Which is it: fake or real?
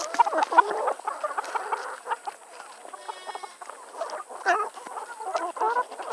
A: real